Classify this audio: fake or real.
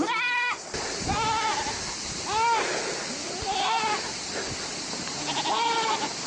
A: real